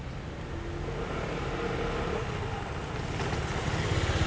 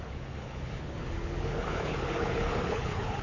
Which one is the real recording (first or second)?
first